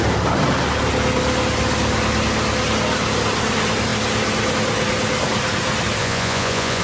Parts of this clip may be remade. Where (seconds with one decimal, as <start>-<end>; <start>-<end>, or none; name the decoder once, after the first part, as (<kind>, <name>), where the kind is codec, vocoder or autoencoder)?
6.0-6.8 (vocoder, Vocos)

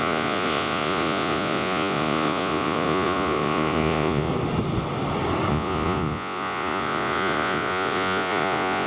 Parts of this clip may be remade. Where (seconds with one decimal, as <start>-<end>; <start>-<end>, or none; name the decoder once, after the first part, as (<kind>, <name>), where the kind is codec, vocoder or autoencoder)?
0.0-4.3 (vocoder, Vocos); 5.5-8.9

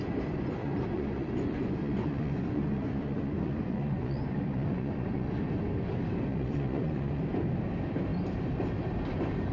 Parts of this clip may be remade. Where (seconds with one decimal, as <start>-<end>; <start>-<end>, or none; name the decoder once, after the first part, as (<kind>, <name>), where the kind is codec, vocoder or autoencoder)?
0.6-5.4 (vocoder, Vocos); 6.3-7.2

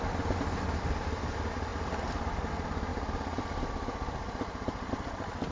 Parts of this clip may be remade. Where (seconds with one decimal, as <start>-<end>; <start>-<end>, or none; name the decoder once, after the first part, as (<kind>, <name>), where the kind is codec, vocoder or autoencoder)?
none

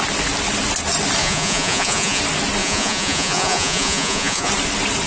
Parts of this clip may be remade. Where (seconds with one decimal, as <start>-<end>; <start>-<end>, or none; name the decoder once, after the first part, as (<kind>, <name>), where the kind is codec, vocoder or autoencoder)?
1.2-2.2 (vocoder, Vocos); 2.6-4.5

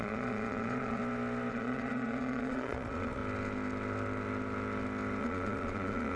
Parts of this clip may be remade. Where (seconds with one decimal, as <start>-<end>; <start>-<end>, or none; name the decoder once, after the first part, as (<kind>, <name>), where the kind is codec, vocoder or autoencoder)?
0.0-1.0 (vocoder, Vocos); 1.5-3.2; 5.2-6.2

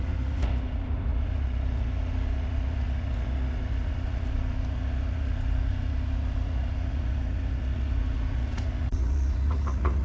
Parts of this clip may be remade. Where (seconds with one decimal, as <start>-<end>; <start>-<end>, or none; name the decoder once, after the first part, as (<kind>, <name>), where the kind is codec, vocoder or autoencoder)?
0.0-10.0 (vocoder, Vocos)

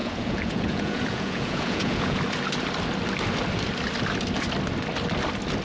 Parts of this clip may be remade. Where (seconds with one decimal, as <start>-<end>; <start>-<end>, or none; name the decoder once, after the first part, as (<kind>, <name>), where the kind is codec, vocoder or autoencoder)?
0.0-2.2 (vocoder, Vocos)